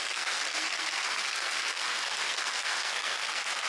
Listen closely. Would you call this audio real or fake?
fake